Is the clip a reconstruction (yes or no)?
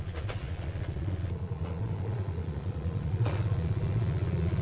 yes